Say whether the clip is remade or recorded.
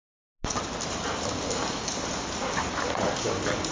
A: recorded